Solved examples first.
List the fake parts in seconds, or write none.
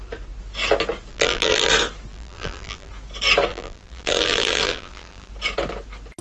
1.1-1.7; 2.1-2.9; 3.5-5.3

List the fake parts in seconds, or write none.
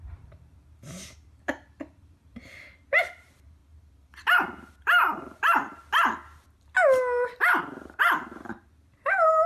0.0-3.6; 4.7-5.8; 8.0-9.5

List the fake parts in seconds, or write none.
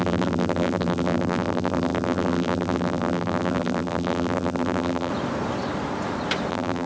0.0-5.1; 6.5-6.9